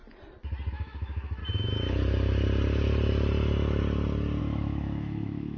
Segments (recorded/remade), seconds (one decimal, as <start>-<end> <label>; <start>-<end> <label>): 0.0-0.7 recorded; 0.7-1.4 remade; 1.4-4.4 recorded; 4.4-5.6 remade